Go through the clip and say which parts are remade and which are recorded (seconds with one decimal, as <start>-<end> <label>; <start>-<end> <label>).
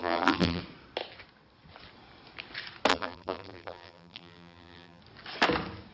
0.0-0.6 remade; 0.6-2.9 recorded; 2.9-5.0 remade; 5.0-5.9 recorded